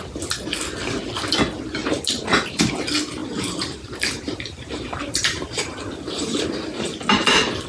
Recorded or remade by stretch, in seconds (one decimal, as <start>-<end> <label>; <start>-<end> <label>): 0.0-1.8 recorded; 1.8-2.6 remade; 2.6-3.2 recorded; 3.2-6.9 remade; 6.9-7.7 recorded